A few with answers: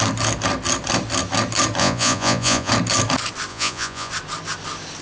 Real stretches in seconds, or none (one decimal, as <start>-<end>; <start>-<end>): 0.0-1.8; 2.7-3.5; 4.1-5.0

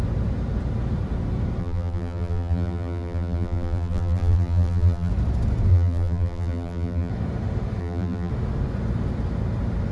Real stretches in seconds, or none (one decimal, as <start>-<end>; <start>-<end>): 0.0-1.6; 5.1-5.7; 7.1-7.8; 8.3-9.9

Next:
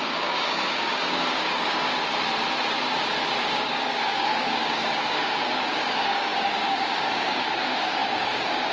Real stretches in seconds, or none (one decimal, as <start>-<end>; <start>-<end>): 1.9-3.4

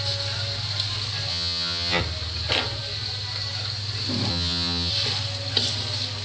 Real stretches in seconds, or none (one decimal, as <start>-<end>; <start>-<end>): 0.0-1.3; 2.0-4.3; 4.9-6.2

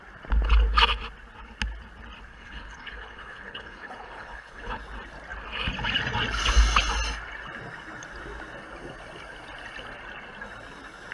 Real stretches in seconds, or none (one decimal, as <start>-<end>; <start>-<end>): 0.0-2.3; 4.8-11.1